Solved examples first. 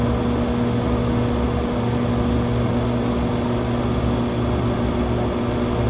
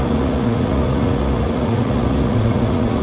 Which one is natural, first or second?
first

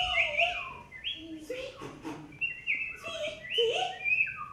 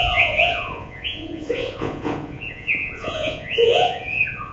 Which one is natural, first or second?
first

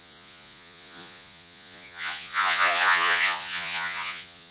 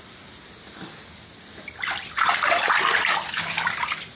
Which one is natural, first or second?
second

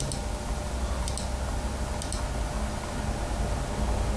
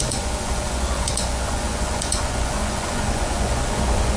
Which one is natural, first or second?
first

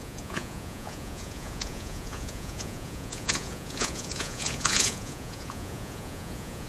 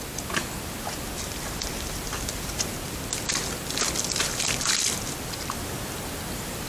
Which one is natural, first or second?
second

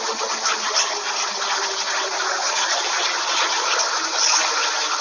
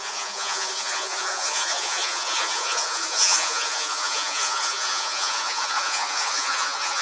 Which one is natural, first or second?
first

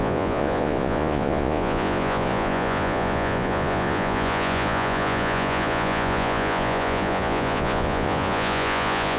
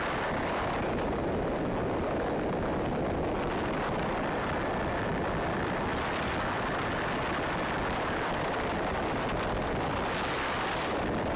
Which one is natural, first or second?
second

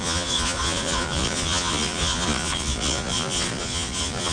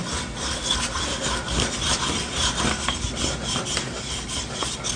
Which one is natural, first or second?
second